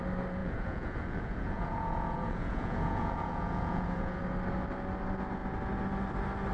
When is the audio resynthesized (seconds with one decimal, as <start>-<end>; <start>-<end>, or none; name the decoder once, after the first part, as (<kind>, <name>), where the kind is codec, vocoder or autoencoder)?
0.4-4.2 (vocoder, Vocos)

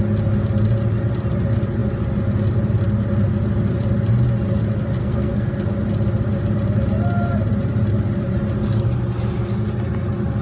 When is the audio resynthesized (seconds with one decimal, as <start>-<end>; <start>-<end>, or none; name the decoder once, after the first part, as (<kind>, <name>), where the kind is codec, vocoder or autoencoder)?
5.0-5.6 (codec, SNAC)

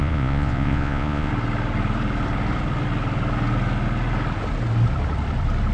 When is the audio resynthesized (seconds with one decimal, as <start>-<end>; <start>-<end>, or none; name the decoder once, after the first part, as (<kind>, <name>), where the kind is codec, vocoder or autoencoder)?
0.0-1.3 (vocoder, Vocos)

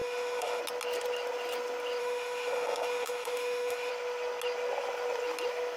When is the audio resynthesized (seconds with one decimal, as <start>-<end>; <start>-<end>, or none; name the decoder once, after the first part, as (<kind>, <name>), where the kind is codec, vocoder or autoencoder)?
0.0-0.6 (autoencoder, DAC-VAE); 2.0-3.9

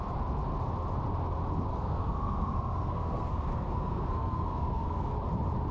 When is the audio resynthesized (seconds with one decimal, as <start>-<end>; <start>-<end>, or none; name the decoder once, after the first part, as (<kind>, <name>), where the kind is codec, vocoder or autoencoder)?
1.7-5.1 (codec, SNAC)